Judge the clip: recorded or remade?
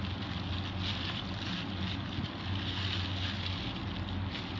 recorded